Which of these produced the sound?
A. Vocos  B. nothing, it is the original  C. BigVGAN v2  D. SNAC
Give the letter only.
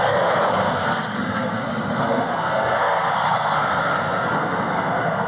D